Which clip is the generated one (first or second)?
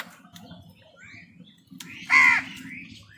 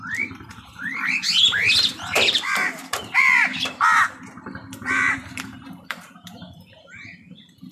second